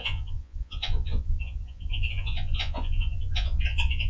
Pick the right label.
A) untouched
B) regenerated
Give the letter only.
B